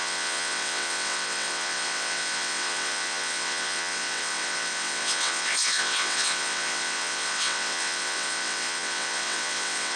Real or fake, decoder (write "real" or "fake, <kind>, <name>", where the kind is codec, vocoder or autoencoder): fake, vocoder, WaveNeXt